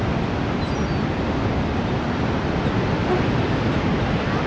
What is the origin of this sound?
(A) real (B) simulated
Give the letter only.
A